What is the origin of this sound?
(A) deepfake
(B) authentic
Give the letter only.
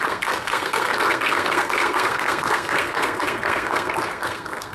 A